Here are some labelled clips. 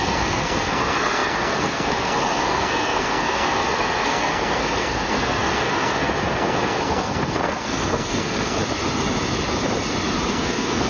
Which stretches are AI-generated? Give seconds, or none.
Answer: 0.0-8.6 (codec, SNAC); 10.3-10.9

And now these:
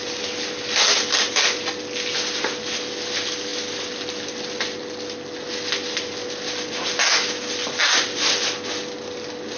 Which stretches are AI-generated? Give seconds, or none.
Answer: none